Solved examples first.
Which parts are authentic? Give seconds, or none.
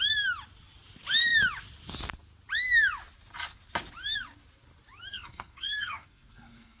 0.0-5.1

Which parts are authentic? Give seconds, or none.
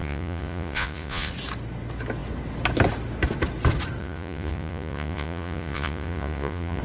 1.3-4.0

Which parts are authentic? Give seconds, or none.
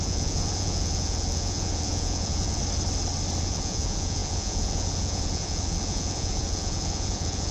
2.6-3.4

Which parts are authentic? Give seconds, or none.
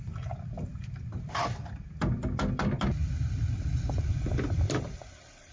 0.0-0.7; 1.7-5.5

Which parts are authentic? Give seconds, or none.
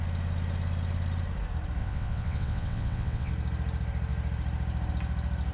0.0-1.8; 3.3-5.5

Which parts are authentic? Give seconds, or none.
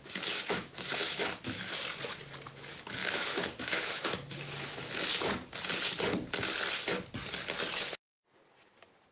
1.8-3.0; 4.9-9.1